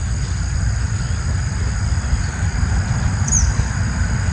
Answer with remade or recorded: recorded